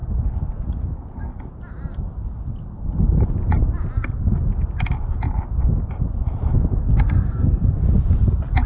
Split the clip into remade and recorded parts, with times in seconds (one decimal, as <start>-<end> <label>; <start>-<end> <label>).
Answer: 0.0-6.8 recorded; 6.8-7.7 remade; 7.7-8.7 recorded